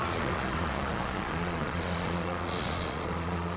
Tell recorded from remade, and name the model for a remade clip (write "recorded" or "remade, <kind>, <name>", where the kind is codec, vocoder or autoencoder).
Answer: remade, vocoder, Vocos